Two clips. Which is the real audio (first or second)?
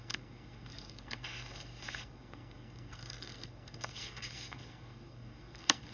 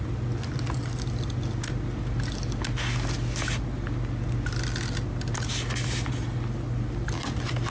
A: second